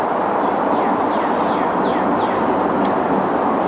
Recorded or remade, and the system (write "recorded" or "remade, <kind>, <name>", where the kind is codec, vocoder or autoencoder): recorded